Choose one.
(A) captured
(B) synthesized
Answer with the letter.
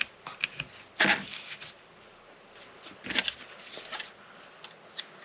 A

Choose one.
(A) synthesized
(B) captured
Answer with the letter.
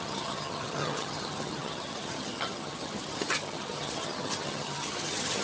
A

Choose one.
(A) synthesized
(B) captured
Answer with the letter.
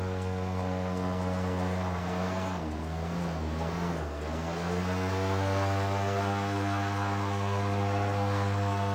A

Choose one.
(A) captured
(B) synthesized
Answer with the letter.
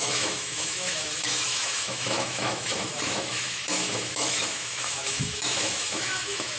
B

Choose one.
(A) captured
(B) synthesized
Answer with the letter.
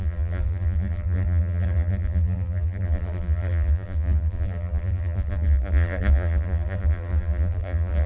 B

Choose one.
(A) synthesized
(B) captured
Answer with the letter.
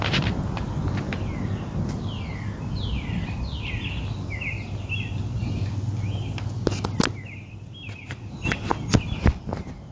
B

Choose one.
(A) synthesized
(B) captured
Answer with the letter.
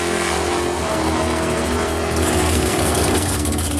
A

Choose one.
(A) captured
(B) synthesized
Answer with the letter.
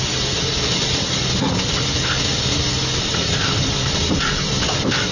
A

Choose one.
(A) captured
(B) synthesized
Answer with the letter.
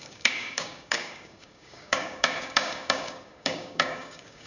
B